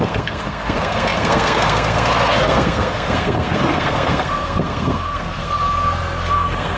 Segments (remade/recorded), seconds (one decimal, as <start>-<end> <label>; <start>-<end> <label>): 0.0-6.8 remade